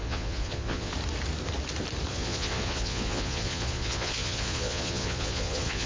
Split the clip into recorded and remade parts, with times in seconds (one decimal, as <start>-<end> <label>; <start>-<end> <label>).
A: 0.0-0.9 remade; 0.9-2.1 recorded; 2.1-5.9 remade